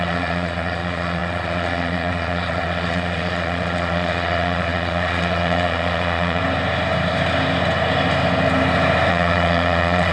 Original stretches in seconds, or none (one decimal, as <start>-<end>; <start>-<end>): 6.4-9.1